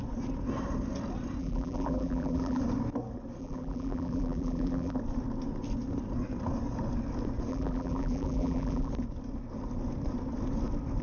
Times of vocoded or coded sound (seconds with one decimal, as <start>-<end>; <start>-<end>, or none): 1.4-2.6; 3.4-5.0; 7.5-8.9